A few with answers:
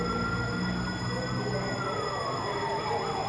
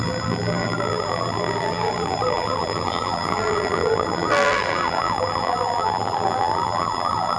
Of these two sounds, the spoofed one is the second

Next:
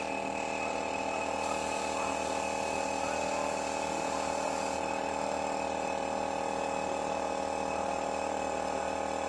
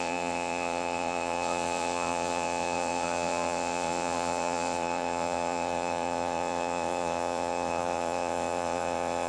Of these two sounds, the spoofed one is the second